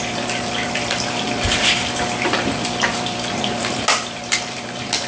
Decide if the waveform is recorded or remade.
remade